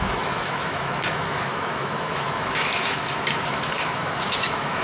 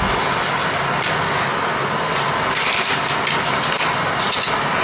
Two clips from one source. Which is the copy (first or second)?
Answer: first